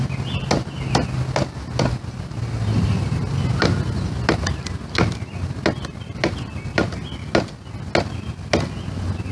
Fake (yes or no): no